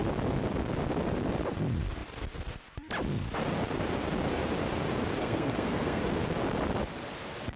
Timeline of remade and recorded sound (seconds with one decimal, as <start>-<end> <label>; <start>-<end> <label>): 0.0-5.2 recorded; 5.2-6.0 remade; 6.0-7.6 recorded